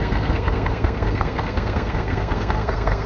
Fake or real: fake